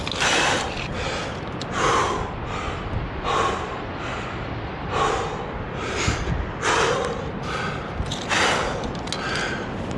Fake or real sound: real